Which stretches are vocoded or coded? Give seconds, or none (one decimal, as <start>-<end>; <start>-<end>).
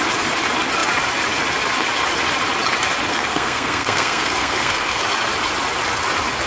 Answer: 3.1-5.0